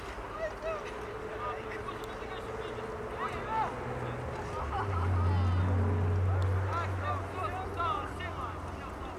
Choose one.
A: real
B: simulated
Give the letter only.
A